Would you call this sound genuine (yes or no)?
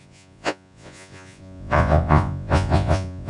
no